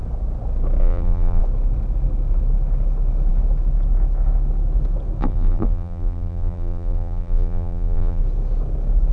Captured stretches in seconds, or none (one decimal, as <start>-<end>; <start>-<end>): 0.0-0.8; 1.4-5.2; 8.2-9.1